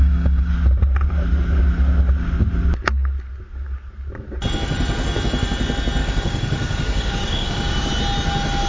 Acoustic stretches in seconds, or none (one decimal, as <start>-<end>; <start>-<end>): 0.5-6.0; 7.9-8.7